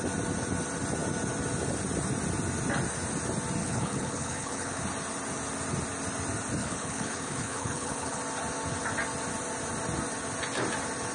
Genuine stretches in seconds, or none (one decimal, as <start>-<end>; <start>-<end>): 0.0-3.6; 4.8-6.6; 8.2-11.1